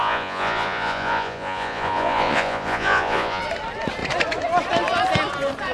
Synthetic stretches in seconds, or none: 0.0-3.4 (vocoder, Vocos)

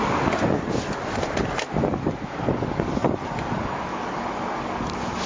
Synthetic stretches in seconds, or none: none

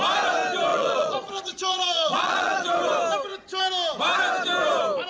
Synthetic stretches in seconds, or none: 0.7-2.8 (vocoder, Vocos)

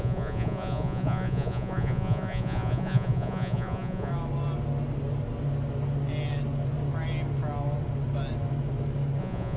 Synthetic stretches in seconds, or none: 0.0-4.1 (vocoder, Vocos); 9.2-9.6

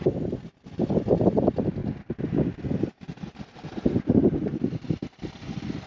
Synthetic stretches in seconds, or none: none

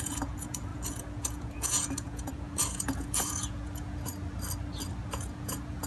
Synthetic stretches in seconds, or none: 0.0-4.1 (vocoder, Vocos); 5.1-5.9

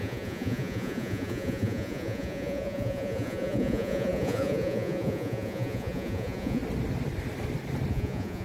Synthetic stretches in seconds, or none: 0.0-6.6 (vocoder, Vocos); 7.9-8.4